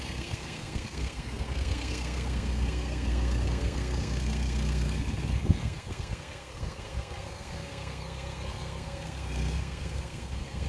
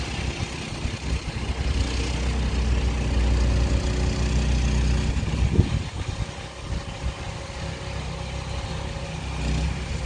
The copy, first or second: first